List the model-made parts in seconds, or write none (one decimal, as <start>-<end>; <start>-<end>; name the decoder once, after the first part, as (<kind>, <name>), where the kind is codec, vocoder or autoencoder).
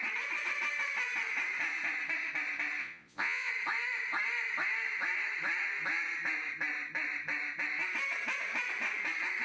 2.8-3.5 (vocoder, Vocos)